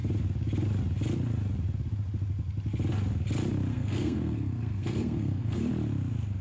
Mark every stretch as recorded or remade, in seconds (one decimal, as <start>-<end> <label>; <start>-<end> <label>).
0.0-3.7 recorded; 3.7-5.6 remade; 5.6-6.4 recorded